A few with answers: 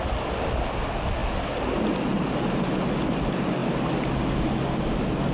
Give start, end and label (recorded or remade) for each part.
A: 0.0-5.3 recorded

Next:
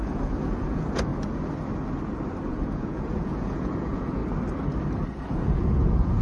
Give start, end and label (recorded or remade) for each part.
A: 0.0-1.1 remade; 1.1-2.5 recorded; 2.5-4.2 remade; 4.2-5.2 recorded; 5.2-6.2 remade

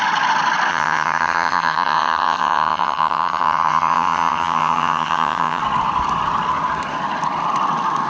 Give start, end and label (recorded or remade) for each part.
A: 0.0-0.7 recorded; 0.7-5.6 remade; 5.6-8.1 recorded

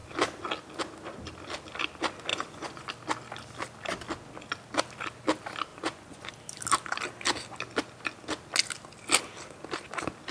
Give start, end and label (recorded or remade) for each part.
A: 0.0-2.3 recorded; 2.3-2.9 remade; 2.9-5.7 recorded; 5.7-6.3 remade; 6.3-10.3 recorded

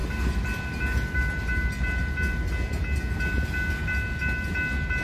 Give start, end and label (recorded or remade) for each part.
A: 0.0-5.0 recorded

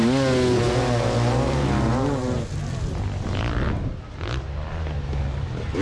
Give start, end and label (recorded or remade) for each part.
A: 0.0-5.8 recorded